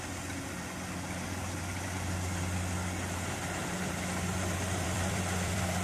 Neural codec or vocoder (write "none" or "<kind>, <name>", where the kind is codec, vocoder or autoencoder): vocoder, BigVGAN v2